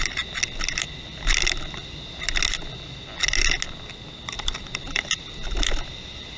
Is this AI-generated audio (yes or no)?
no